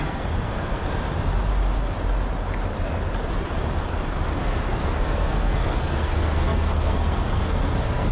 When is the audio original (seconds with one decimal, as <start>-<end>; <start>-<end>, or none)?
0.8-4.4